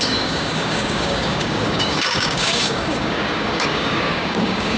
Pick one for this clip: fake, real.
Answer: fake